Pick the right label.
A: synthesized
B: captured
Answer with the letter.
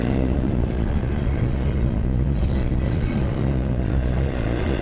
A